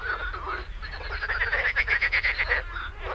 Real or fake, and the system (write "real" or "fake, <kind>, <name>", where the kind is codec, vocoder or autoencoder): real